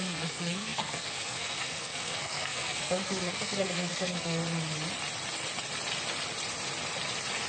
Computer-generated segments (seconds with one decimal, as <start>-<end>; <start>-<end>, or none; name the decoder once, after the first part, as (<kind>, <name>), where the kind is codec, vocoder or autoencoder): 0.0-4.4 (codec, SNAC)